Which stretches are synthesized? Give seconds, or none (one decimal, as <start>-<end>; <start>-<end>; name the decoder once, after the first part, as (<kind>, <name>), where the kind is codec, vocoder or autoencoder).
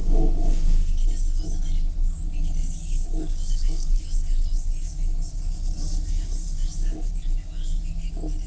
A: 0.0-0.9 (autoencoder, DAC-VAE)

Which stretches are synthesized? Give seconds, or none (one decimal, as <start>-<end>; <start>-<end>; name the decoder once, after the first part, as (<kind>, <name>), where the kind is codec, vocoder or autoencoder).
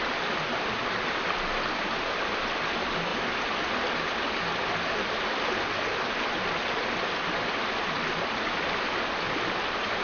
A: none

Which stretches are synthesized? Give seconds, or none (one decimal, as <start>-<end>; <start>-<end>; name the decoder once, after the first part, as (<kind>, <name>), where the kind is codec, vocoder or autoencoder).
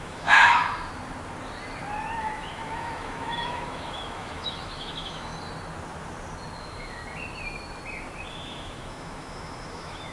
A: 0.0-0.6 (autoencoder, DAC-VAE); 2.2-5.3; 6.6-7.0; 8.3-10.1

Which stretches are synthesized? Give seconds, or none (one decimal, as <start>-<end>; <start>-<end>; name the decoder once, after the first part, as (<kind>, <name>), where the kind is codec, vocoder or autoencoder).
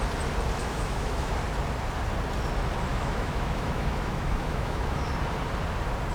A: 0.6-1.3 (autoencoder, DAC-VAE); 2.9-5.1